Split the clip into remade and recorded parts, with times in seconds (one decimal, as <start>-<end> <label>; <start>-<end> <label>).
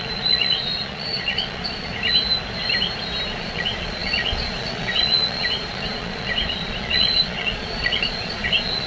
0.0-1.9 remade; 1.9-3.3 recorded; 3.3-8.9 remade